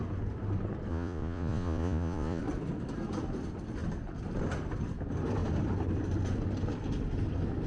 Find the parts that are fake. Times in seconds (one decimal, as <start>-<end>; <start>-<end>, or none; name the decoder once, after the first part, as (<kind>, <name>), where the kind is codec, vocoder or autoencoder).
0.9-2.4 (vocoder, Vocos)